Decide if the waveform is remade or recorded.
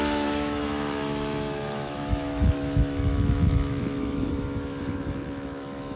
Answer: remade